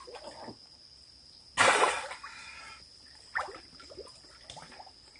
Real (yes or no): no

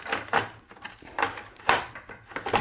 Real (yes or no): yes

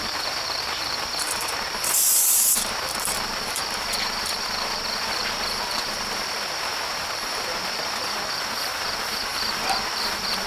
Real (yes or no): no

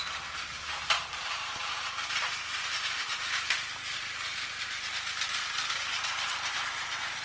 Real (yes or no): yes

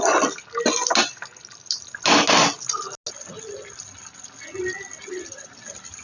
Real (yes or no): yes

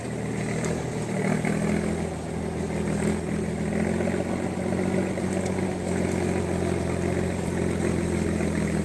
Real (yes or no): yes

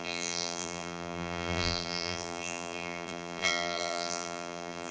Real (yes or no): no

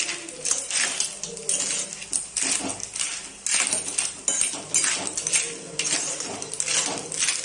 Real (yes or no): yes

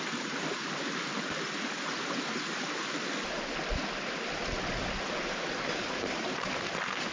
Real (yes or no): yes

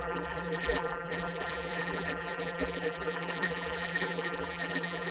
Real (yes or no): no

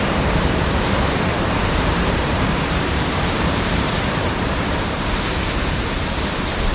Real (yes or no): no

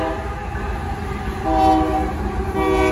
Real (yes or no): yes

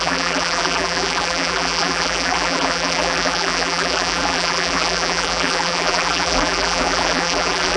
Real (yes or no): no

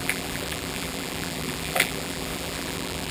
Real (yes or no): no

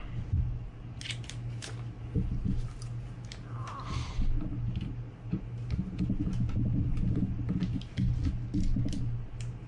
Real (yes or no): yes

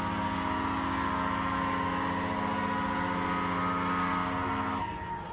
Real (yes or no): yes